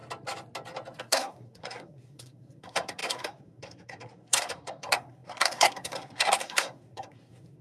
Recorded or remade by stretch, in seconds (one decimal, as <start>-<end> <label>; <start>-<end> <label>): 0.0-1.0 recorded; 1.0-7.6 remade